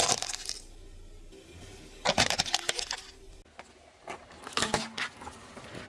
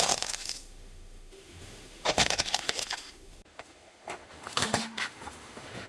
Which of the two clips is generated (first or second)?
second